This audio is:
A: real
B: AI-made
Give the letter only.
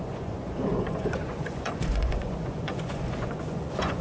B